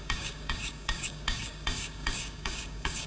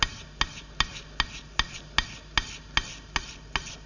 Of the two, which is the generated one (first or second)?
first